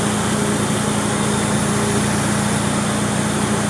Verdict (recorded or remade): recorded